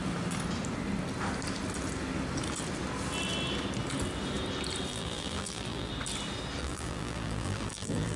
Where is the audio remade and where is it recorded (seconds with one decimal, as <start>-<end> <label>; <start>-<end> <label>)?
0.0-4.9 recorded; 4.9-5.9 remade; 5.9-6.6 recorded; 6.6-8.2 remade